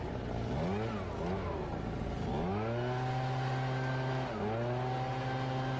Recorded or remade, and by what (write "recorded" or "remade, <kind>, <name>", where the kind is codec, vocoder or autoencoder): recorded